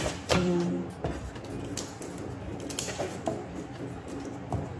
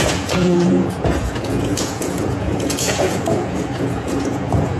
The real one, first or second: first